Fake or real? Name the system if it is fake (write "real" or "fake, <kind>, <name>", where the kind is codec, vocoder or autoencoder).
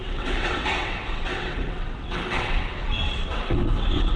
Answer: fake, vocoder, WaveNeXt